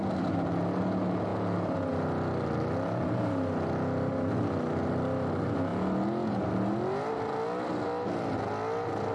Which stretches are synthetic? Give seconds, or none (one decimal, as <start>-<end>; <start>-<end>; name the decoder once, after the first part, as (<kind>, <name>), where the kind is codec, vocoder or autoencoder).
none